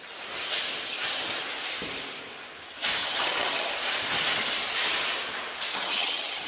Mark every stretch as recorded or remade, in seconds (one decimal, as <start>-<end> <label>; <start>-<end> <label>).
0.0-3.0 recorded; 3.0-3.7 remade; 3.7-5.7 recorded; 5.7-6.5 remade